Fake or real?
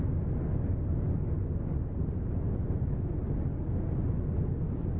real